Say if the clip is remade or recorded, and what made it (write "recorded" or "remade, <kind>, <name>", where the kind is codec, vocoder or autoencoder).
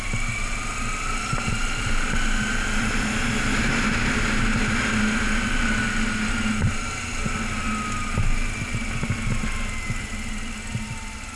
recorded